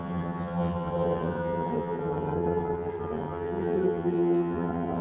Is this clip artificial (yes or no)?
yes